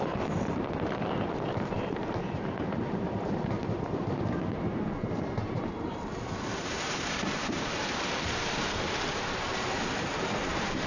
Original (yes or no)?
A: no